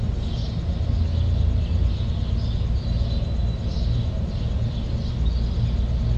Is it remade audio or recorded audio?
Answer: recorded